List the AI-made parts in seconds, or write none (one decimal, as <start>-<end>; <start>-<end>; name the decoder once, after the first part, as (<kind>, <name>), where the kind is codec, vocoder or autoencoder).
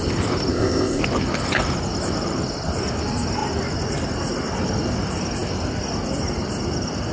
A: 0.5-1.0 (codec, ZipCodec)